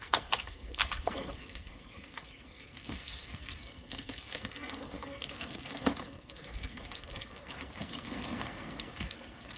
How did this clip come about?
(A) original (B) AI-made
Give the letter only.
B